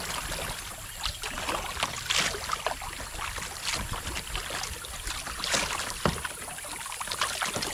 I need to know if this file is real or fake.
real